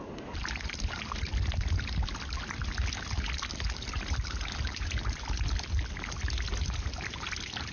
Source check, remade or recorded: recorded